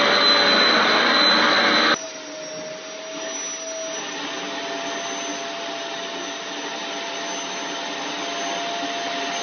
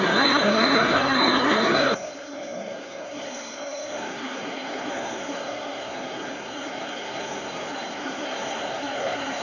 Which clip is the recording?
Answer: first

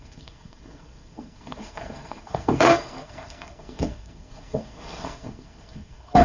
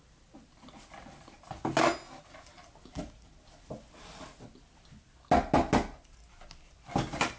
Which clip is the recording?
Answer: second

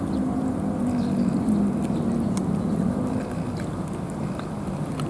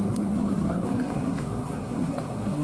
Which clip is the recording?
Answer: first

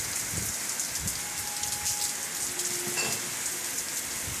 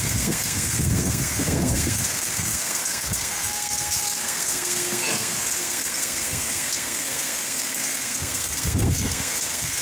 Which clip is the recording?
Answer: first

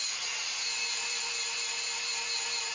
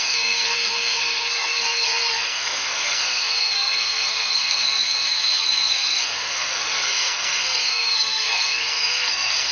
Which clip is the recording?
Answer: first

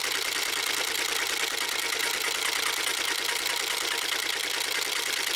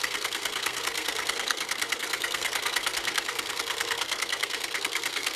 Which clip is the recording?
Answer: first